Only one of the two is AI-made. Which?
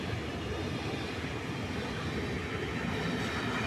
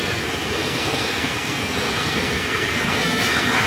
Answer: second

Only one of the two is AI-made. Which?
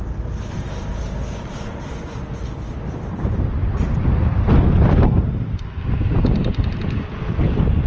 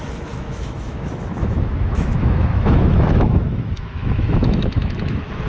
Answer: second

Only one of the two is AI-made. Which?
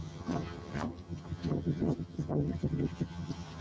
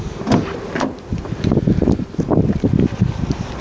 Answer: first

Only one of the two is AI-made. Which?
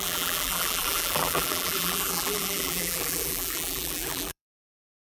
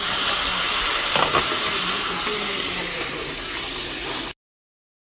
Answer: first